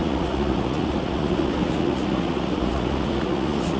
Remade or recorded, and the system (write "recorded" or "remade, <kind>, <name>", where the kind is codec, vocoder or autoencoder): remade, vocoder, Vocos